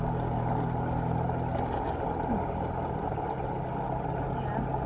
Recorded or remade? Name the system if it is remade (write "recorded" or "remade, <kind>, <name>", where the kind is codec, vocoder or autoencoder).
recorded